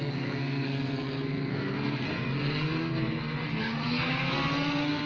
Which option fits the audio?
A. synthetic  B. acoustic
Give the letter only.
A